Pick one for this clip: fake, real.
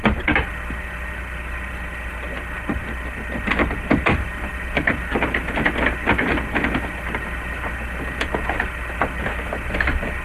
real